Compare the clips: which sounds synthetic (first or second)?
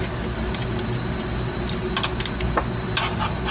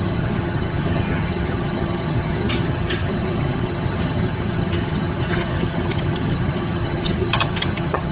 second